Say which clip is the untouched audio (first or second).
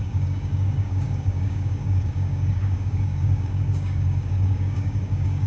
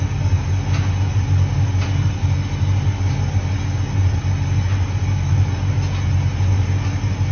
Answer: second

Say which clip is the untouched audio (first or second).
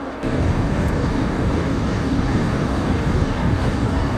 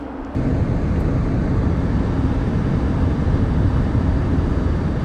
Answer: second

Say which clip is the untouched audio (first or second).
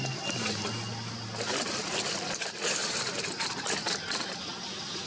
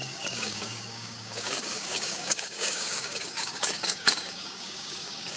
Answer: first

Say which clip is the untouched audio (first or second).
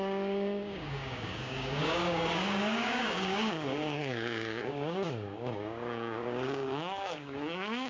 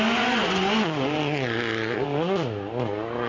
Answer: second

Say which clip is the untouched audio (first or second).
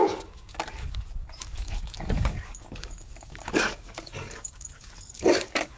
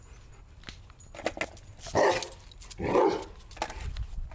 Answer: second